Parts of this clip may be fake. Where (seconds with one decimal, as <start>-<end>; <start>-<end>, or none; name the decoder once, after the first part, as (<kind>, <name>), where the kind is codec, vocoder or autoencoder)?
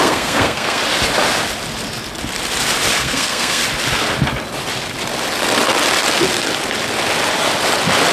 0.0-0.8 (codec, SNAC); 2.9-3.6